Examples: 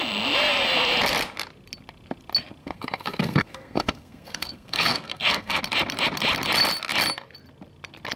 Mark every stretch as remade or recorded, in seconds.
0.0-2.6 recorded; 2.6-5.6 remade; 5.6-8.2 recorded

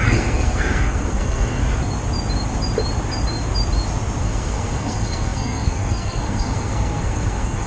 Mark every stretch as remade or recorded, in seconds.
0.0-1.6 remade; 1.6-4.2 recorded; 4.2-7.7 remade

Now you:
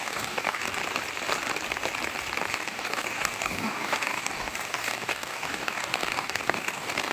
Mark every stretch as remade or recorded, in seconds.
0.0-0.8 remade; 0.8-2.5 recorded; 2.5-7.1 remade